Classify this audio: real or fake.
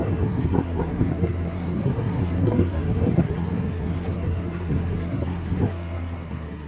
fake